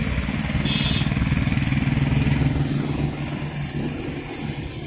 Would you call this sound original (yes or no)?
yes